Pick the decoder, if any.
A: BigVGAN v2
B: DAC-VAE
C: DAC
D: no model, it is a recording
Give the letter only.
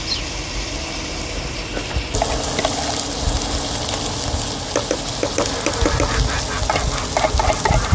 D